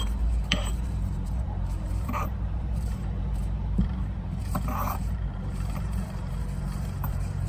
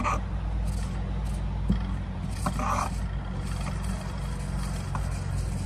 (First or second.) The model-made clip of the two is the first